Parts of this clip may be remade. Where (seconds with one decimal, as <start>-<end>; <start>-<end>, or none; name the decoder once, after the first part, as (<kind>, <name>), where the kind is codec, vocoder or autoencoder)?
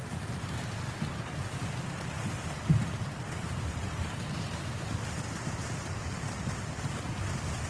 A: none